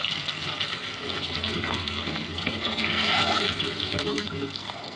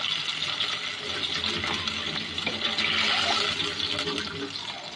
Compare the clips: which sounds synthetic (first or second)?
first